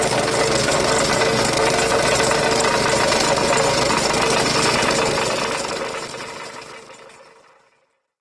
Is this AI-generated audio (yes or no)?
no